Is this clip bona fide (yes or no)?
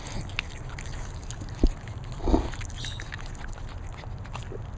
yes